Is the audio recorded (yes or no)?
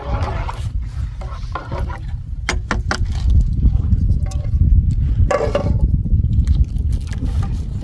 yes